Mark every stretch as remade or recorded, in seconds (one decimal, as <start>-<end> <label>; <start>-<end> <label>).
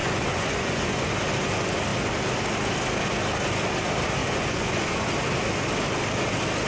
0.0-1.1 remade; 1.1-4.2 recorded; 4.2-5.1 remade; 5.1-6.7 recorded